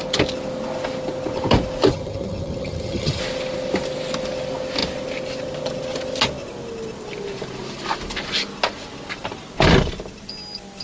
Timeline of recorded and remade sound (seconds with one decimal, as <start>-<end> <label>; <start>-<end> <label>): 0.0-1.9 recorded; 1.9-3.2 remade; 3.2-10.8 recorded